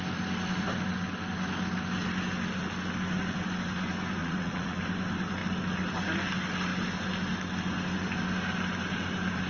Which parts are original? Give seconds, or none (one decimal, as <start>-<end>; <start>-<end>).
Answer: 0.0-4.2; 4.8-9.5